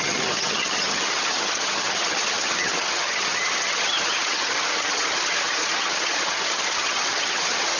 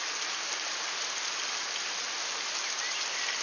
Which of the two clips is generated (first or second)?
first